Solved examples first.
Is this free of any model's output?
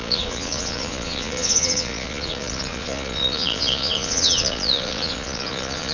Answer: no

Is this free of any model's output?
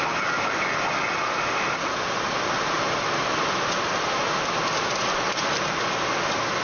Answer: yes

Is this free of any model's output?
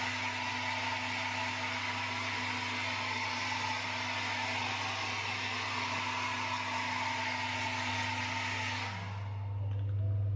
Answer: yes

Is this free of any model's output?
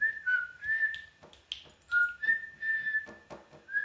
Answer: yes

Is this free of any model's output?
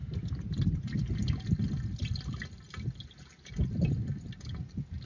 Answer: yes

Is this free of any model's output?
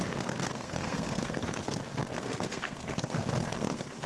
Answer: no